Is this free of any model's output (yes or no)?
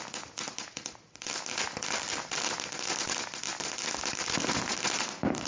yes